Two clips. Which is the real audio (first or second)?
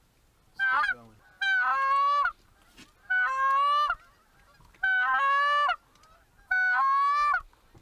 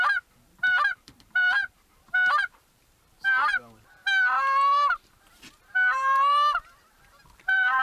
first